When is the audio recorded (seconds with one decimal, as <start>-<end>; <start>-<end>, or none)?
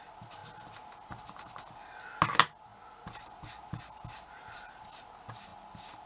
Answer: 0.0-6.1